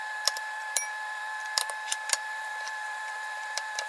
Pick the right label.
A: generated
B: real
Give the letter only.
A